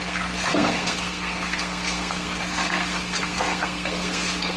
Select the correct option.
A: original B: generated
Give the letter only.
B